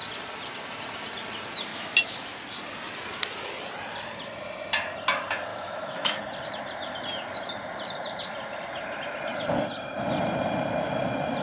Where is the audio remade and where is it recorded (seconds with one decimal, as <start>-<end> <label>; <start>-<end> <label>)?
0.0-1.7 recorded; 1.7-2.4 remade; 2.4-5.5 recorded; 5.5-6.2 remade; 6.2-11.4 recorded